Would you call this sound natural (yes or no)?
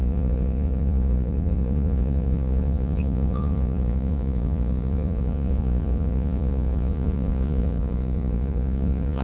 no